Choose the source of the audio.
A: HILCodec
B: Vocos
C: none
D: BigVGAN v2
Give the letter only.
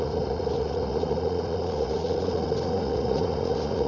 B